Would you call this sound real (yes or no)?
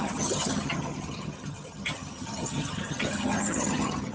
no